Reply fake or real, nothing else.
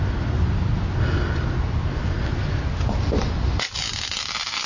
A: real